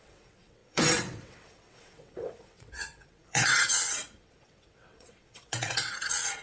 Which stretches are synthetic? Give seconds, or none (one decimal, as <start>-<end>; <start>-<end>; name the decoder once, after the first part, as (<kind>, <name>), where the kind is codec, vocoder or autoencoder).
0.0-6.4 (vocoder, WaveNeXt)